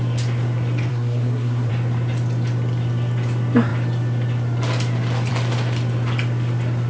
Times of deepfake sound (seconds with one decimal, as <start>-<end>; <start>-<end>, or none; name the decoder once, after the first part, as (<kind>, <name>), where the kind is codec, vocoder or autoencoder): 0.9-1.7 (codec, SNAC)